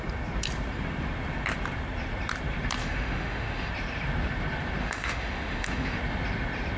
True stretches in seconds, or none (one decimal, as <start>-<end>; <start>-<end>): 0.0-2.8; 3.7-4.8; 6.0-6.8